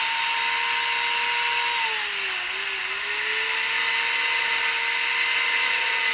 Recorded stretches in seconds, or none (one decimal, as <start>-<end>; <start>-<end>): 0.0-6.1